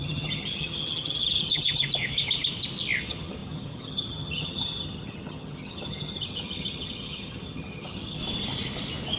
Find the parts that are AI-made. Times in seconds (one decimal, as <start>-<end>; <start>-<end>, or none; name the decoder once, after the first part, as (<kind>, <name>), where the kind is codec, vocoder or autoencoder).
0.0-1.8 (vocoder, HiFi-GAN); 3.0-8.2